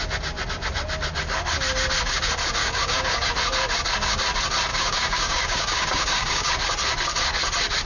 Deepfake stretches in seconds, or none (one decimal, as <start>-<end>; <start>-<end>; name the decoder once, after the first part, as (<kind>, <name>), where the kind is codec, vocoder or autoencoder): 2.6-3.3 (codec, DAC); 4.7-6.5